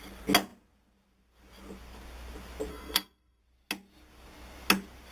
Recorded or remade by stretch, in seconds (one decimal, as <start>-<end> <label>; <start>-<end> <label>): 0.0-2.7 recorded; 2.7-3.4 remade; 3.4-5.1 recorded